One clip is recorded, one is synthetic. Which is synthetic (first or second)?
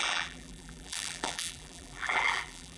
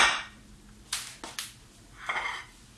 first